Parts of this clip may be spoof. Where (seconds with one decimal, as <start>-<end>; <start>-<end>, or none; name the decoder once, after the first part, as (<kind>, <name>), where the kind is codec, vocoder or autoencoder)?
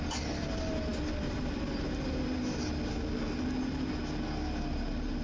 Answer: none